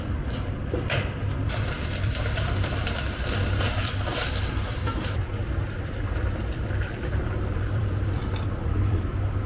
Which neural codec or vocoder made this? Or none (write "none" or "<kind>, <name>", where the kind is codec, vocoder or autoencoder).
vocoder, BigVGAN v2